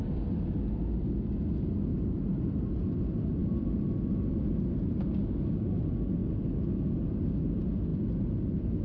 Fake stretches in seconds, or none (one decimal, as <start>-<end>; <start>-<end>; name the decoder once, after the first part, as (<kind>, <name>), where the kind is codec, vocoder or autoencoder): 1.9-2.8 (vocoder, BigVGAN v2)